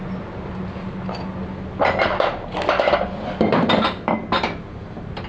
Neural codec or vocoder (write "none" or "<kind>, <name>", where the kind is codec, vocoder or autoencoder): none